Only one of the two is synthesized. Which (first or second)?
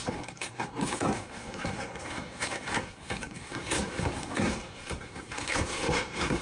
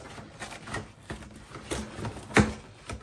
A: first